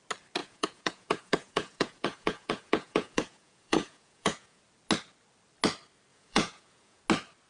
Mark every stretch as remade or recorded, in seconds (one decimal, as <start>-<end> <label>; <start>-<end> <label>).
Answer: 0.0-0.4 recorded; 0.4-4.6 remade; 4.6-6.1 recorded; 6.1-7.0 remade; 7.0-7.5 recorded